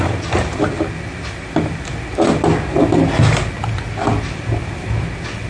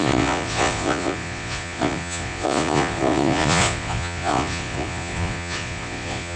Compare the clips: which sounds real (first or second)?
first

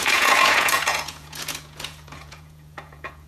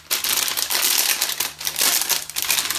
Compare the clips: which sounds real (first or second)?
second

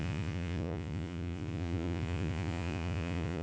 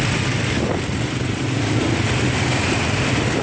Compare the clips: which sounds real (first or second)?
second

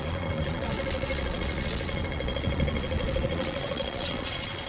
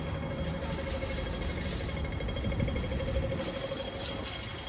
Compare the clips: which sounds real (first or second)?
second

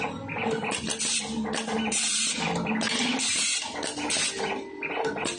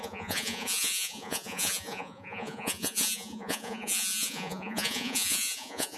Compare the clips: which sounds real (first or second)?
first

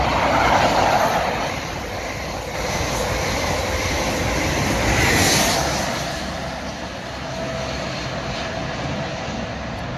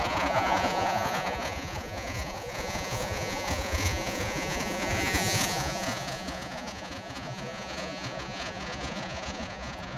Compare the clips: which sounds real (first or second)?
first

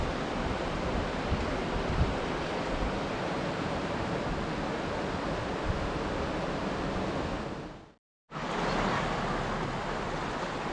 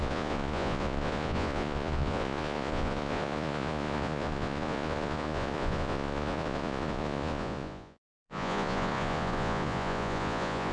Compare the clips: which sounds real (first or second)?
first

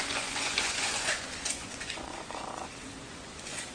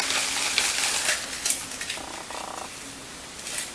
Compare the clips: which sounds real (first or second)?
second